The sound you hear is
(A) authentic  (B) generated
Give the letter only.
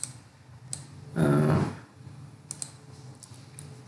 A